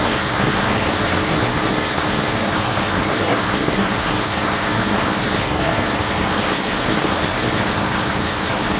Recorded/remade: remade